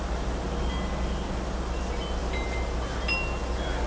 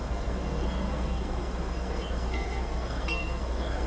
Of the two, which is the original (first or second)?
first